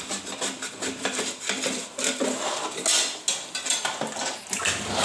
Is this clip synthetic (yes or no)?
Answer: no